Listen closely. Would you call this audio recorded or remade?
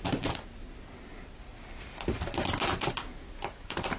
recorded